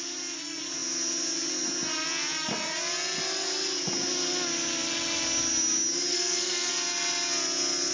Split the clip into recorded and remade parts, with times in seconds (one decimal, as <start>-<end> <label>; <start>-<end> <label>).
0.0-6.1 recorded; 6.1-6.7 remade; 6.7-7.9 recorded